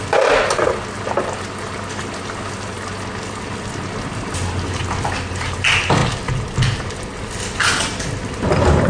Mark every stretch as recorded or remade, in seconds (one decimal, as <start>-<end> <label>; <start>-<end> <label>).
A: 0.0-8.9 recorded